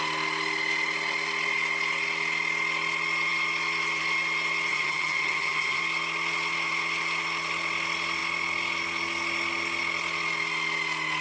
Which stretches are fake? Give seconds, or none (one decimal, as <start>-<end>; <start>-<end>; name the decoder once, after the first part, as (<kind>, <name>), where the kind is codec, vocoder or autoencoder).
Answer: 4.7-5.8 (vocoder, HiFi-GAN)